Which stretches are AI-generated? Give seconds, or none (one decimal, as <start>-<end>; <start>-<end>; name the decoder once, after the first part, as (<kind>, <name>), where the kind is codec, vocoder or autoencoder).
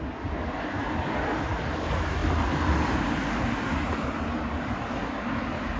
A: none